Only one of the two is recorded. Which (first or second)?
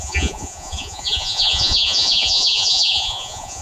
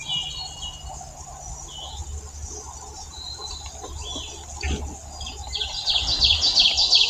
second